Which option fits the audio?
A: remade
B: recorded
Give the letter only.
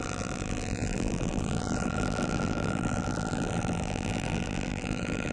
A